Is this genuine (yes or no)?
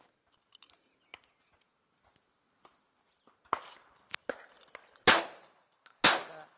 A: yes